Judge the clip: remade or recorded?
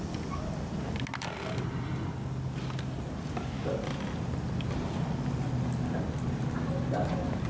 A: recorded